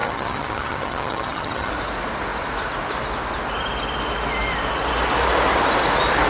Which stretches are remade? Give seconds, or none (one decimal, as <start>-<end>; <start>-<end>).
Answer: 0.0-1.7